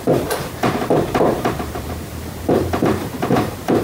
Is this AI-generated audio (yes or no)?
yes